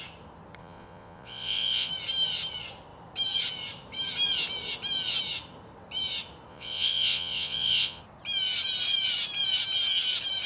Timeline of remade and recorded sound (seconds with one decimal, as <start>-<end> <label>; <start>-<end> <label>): 0.0-0.6 recorded; 0.6-1.9 remade; 1.9-6.5 recorded; 6.5-8.0 remade; 8.0-10.5 recorded